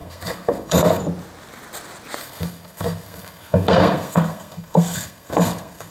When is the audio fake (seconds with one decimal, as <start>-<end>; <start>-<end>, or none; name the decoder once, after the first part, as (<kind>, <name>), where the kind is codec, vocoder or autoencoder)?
0.0-1.0 (codec, SNAC); 2.2-5.9